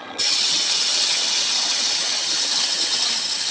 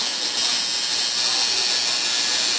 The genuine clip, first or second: second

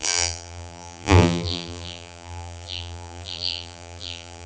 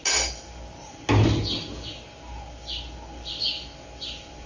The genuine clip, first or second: second